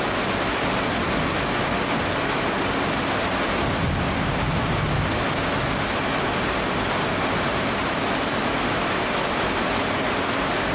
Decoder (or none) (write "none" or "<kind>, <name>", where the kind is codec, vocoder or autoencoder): none